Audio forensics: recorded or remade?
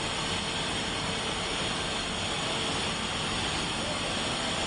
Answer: recorded